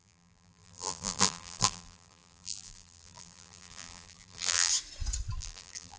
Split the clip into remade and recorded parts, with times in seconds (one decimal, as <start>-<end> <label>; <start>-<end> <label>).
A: 0.0-4.7 remade; 4.7-5.4 recorded; 5.4-6.0 remade